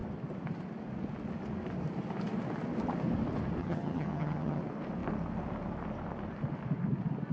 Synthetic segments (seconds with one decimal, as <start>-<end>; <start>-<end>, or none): 3.6-4.6